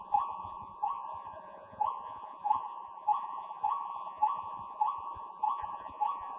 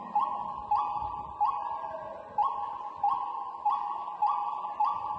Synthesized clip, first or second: first